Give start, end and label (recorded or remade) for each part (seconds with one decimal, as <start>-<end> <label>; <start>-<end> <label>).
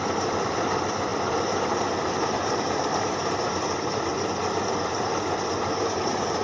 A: 0.0-4.1 remade; 4.1-5.8 recorded; 5.8-6.4 remade